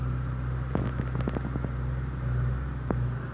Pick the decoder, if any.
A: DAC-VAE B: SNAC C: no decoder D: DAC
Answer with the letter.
C